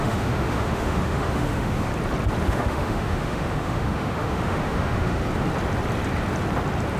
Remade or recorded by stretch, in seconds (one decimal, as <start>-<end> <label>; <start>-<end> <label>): 0.0-1.9 remade; 1.9-2.5 recorded; 2.5-5.2 remade; 5.2-7.0 recorded

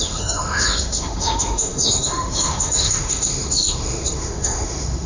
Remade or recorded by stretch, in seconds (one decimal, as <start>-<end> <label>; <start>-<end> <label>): 0.0-5.1 remade

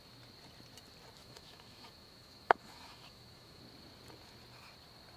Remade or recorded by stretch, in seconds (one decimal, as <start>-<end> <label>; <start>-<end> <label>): 0.0-1.2 recorded; 1.2-3.6 remade; 3.6-5.2 recorded

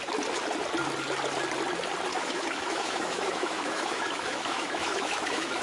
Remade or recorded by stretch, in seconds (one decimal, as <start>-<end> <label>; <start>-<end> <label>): 0.0-2.1 recorded; 2.1-5.6 remade

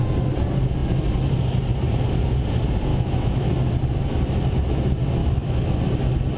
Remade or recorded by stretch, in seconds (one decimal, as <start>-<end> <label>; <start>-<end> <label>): 0.0-2.9 recorded; 2.9-3.5 remade; 3.5-5.2 recorded; 5.2-5.8 remade; 5.8-6.4 recorded